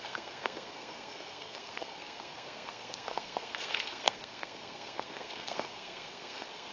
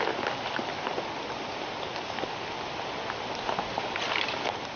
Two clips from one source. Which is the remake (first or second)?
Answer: first